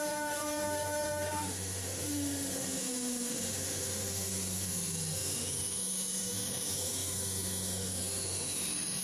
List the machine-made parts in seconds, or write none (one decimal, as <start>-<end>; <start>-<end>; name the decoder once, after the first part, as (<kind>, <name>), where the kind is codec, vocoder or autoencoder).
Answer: 0.0-9.0 (autoencoder, DAC-VAE)